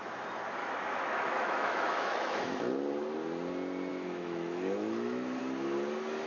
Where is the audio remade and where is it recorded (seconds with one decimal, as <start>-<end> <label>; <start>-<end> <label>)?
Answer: 0.0-0.6 recorded; 0.6-2.6 remade; 2.6-3.9 recorded; 3.9-5.4 remade; 5.4-6.3 recorded